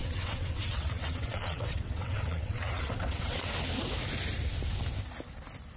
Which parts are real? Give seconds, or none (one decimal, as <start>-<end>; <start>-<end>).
3.5-5.8